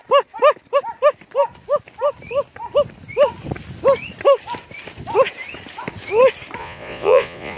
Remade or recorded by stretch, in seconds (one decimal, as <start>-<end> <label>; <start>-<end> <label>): 0.0-6.6 recorded; 6.6-7.6 remade